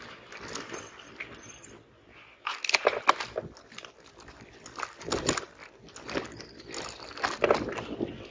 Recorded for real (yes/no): yes